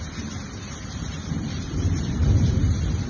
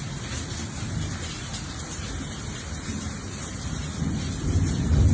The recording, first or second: second